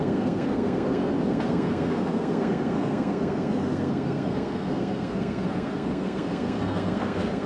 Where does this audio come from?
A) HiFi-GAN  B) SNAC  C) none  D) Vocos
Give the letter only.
B